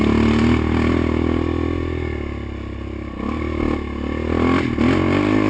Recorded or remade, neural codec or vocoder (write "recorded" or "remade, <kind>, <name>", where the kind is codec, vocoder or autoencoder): recorded